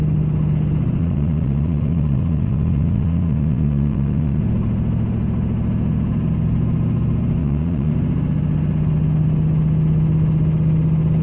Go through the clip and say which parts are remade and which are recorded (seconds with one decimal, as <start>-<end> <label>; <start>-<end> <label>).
0.0-1.0 recorded; 1.0-4.4 remade; 4.4-7.4 recorded; 7.4-7.9 remade; 7.9-11.2 recorded